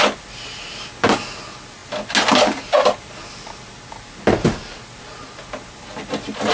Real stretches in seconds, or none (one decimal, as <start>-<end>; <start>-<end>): 0.0-6.5